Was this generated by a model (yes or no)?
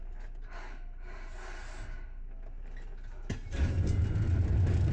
no